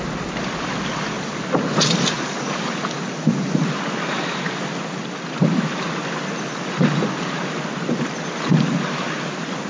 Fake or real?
real